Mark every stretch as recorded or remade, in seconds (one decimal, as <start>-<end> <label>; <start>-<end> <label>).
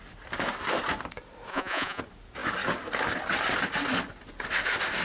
0.0-1.5 recorded; 1.5-2.0 remade; 2.0-5.0 recorded